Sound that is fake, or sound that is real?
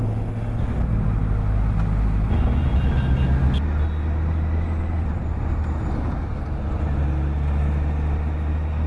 real